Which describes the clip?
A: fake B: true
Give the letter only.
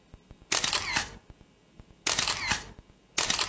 B